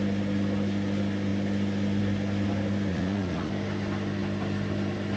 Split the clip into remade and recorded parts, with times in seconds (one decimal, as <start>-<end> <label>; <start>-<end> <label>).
0.0-2.9 recorded; 2.9-3.5 remade; 3.5-5.2 recorded